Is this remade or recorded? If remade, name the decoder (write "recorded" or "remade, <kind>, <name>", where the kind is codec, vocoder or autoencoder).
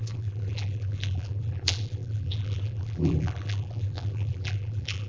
remade, vocoder, BigVGAN v2